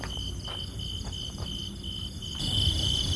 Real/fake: real